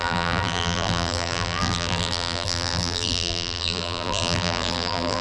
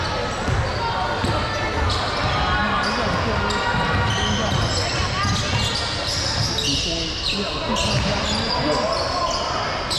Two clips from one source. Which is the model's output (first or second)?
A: first